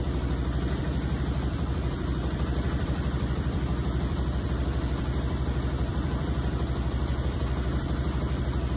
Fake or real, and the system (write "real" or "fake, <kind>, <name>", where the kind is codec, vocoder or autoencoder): fake, vocoder, BigVGAN v2